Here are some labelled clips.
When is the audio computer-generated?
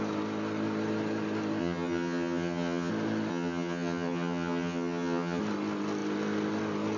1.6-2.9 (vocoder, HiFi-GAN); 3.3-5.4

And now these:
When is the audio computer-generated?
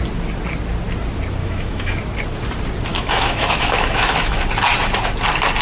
1.4-2.0 (autoencoder, DAC-VAE); 2.9-4.4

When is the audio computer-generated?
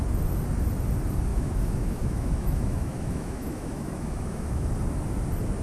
1.3-4.7 (autoencoder, DAC-VAE)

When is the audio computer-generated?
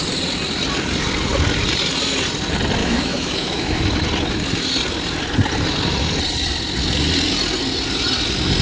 2.8-3.8 (autoencoder, DAC-VAE)